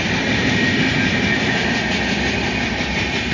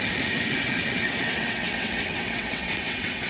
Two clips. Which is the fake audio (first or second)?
second